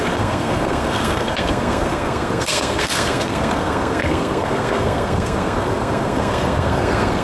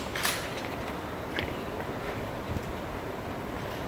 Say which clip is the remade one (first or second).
first